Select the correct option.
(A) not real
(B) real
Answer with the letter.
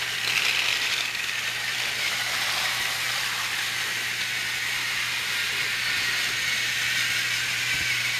B